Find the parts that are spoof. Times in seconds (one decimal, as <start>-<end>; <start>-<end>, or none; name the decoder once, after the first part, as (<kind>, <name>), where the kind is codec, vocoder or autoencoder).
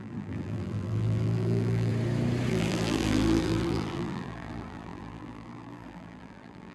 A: 0.0-1.9 (vocoder, BigVGAN v2); 2.5-6.7